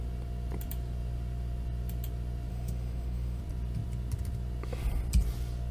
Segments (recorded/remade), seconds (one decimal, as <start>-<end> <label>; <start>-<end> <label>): 0.0-2.5 recorded; 2.5-3.4 remade; 3.4-5.7 recorded

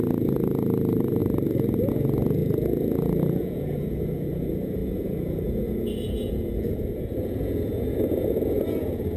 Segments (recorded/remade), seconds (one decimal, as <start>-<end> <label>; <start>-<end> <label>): 0.0-1.2 remade; 1.2-1.9 recorded; 1.9-9.2 remade

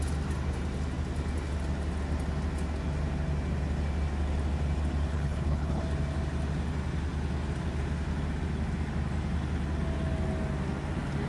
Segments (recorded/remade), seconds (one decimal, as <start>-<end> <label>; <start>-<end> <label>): 0.0-5.1 recorded; 5.1-5.8 remade; 5.8-11.3 recorded

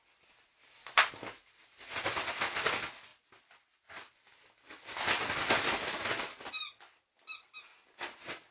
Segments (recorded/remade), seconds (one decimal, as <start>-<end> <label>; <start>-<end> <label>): 0.0-8.5 recorded

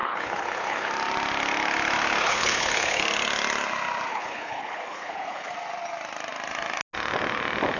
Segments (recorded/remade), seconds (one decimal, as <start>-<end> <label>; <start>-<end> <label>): 0.0-0.9 remade; 0.9-2.2 recorded; 2.2-3.0 remade; 3.0-4.1 recorded; 4.1-5.5 remade; 5.5-7.8 recorded

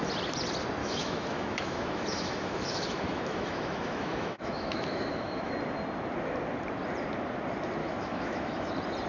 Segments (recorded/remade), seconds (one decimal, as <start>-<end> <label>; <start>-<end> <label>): 0.0-0.8 recorded; 0.8-5.5 remade; 5.5-7.8 recorded; 7.8-8.7 remade; 8.7-9.1 recorded

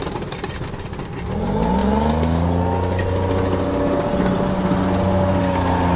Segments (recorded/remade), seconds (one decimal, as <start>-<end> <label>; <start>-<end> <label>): 0.0-6.0 recorded

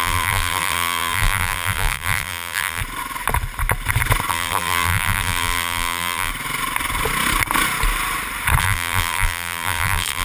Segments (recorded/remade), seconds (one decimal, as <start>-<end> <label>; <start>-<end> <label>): 0.0-2.8 remade; 2.8-4.3 recorded; 4.3-6.3 remade; 6.3-8.6 recorded; 8.6-10.2 remade